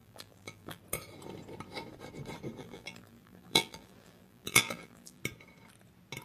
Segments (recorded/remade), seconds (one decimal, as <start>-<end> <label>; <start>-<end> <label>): 0.0-0.8 remade; 0.8-2.6 recorded; 2.6-5.2 remade; 5.2-6.2 recorded